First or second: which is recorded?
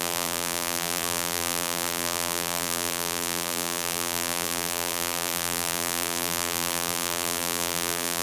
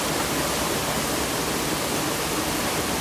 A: second